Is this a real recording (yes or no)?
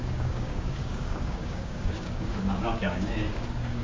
no